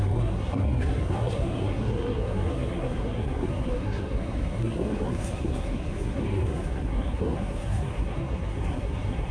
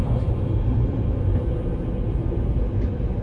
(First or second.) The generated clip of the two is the first